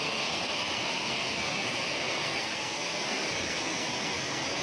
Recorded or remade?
remade